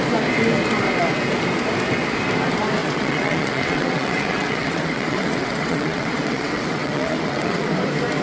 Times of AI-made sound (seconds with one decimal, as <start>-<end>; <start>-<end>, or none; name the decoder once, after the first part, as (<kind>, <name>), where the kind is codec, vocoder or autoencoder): 2.8-7.7 (vocoder, WaveNeXt)